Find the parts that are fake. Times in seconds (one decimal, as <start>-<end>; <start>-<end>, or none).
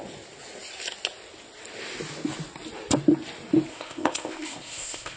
3.7-5.2